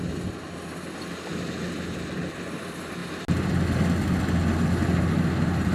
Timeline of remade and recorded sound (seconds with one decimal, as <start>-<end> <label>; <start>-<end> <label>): 0.0-5.7 recorded